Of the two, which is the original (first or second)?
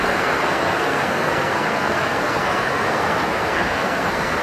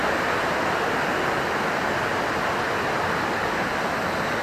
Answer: second